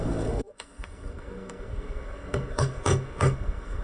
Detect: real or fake fake